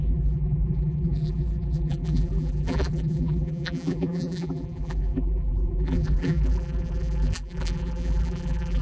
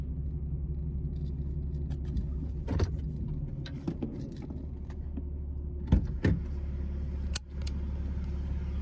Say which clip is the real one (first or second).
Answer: second